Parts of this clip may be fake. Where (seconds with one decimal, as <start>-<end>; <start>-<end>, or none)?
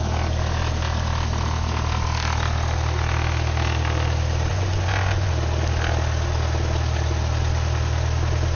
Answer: 4.5-5.3